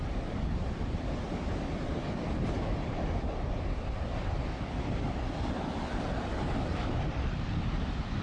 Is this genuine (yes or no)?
yes